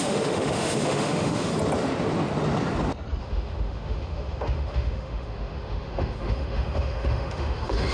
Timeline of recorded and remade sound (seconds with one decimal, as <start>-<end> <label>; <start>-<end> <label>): 0.0-1.5 remade; 1.5-3.2 recorded; 3.2-7.9 remade

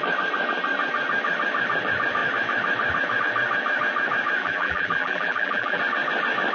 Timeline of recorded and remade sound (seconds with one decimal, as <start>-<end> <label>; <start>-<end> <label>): 0.0-4.4 recorded; 4.4-5.8 remade; 5.8-6.5 recorded

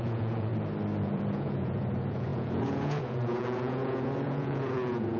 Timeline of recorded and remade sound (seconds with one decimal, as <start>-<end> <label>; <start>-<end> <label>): 0.0-0.5 remade; 0.5-1.0 recorded; 1.0-5.2 remade

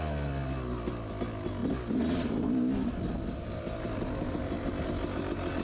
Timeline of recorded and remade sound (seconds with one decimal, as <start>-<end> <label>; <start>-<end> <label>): 0.0-5.6 recorded

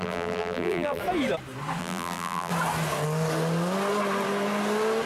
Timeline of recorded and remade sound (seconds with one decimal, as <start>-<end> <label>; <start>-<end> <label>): 0.0-1.0 remade; 1.0-1.8 recorded; 1.8-2.5 remade; 2.5-5.1 recorded

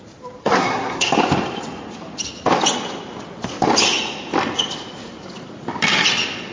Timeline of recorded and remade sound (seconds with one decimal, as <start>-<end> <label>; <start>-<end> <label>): 0.0-0.4 recorded; 0.4-1.1 remade; 1.1-6.5 recorded

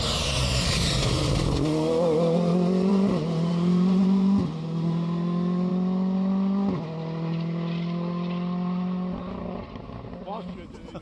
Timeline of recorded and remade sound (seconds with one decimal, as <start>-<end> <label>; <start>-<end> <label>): 0.0-11.0 recorded

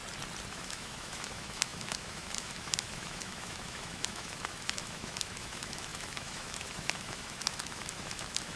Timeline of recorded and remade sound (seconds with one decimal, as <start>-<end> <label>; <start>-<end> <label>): 0.0-0.5 recorded; 0.5-8.6 remade